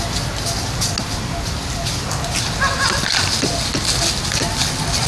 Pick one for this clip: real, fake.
real